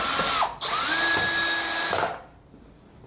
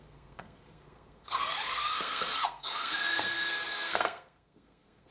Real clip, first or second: first